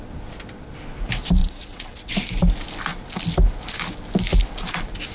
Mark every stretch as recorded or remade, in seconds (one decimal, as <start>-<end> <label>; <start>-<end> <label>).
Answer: 0.0-1.4 recorded; 1.4-2.1 remade; 2.1-5.1 recorded